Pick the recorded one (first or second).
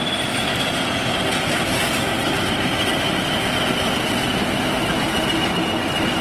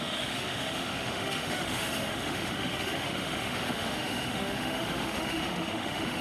first